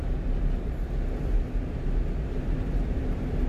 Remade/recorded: recorded